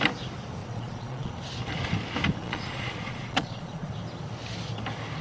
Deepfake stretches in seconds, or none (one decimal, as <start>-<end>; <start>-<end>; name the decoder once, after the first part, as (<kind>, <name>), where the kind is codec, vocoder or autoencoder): 0.6-1.3 (vocoder, Vocos); 2.4-3.9